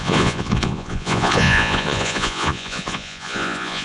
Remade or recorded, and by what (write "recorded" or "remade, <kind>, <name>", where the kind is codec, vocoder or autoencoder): remade, vocoder, Vocos